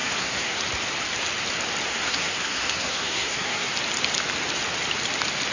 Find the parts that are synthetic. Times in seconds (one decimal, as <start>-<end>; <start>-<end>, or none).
0.0-0.6; 1.9-3.7